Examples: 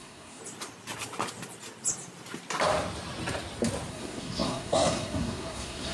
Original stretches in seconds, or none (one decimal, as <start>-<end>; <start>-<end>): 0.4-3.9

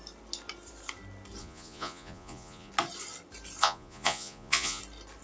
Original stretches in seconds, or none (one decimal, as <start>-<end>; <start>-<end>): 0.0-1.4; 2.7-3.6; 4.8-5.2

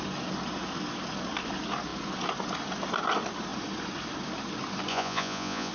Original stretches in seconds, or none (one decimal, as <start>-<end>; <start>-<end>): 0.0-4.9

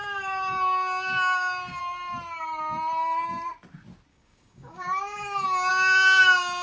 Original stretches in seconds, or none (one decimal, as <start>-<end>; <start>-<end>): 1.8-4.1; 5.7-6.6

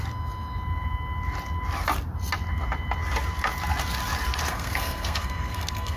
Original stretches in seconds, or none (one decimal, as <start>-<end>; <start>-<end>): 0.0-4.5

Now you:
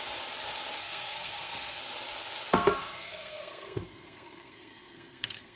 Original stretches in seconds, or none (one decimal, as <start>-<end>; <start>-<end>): 0.0-0.8; 1.8-2.5

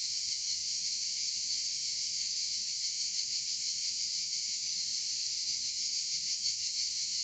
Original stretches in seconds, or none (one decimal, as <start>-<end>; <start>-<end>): none